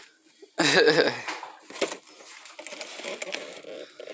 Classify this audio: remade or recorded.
recorded